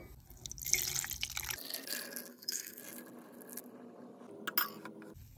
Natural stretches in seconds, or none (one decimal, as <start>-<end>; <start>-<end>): 0.0-2.3; 2.8-5.4